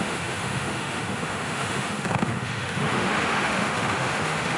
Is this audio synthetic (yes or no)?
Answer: yes